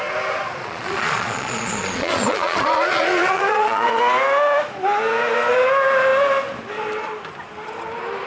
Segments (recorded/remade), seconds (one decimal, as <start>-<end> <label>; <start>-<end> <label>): 0.0-0.6 recorded; 0.6-4.0 remade; 4.0-8.3 recorded